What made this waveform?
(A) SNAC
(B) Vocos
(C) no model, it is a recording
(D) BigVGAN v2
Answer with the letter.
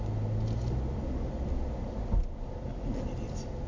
C